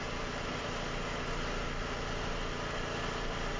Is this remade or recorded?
recorded